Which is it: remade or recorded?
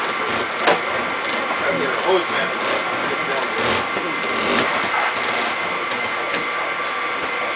recorded